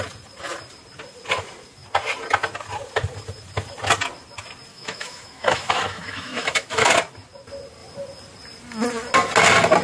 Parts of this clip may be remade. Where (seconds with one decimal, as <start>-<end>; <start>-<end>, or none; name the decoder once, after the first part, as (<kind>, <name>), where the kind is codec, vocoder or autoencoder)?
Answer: 4.7-6.9 (autoencoder, DAC-VAE)